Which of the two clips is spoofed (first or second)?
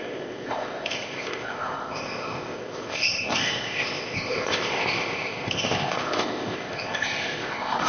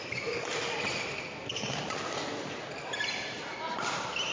first